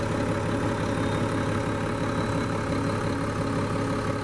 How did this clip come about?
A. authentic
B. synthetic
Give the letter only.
A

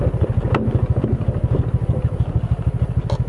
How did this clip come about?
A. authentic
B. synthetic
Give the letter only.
A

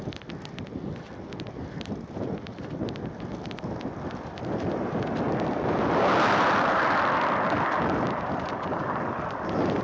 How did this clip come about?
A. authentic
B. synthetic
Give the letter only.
A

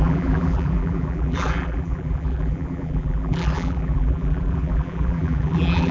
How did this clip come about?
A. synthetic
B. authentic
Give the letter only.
A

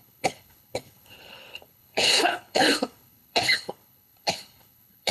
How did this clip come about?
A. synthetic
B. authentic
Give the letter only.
A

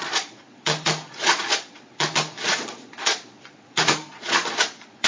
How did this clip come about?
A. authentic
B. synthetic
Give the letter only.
B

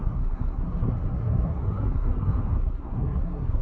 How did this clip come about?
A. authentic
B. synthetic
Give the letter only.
B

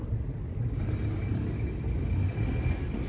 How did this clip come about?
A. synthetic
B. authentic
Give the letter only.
B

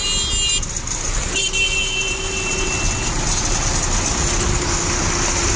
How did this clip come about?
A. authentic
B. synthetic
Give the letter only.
A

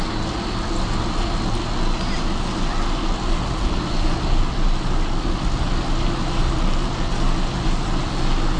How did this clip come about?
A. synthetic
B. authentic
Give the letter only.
B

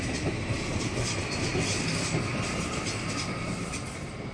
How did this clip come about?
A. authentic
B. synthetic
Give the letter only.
A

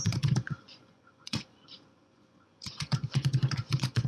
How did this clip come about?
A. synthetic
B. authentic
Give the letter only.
A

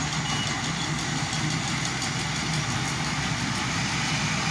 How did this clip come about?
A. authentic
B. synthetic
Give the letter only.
A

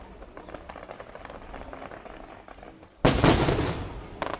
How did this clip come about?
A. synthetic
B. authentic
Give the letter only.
B